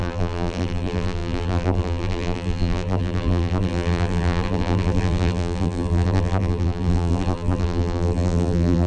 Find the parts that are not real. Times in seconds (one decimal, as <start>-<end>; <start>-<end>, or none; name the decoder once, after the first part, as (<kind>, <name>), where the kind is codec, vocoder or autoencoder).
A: 0.0-8.9 (vocoder, BigVGAN v2)